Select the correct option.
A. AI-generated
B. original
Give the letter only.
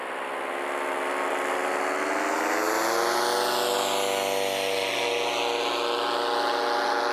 B